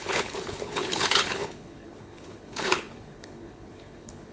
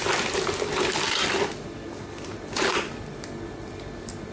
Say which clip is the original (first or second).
second